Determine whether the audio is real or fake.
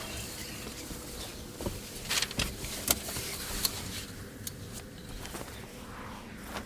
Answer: real